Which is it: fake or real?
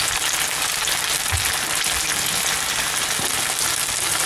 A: real